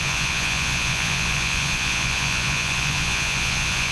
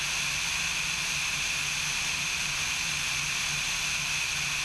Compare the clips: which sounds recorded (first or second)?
second